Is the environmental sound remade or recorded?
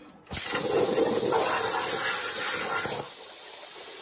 recorded